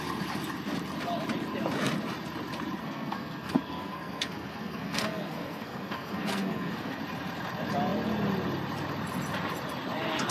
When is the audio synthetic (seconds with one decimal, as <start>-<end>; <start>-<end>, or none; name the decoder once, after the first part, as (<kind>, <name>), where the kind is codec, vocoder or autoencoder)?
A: 2.8-7.0 (codec, SNAC)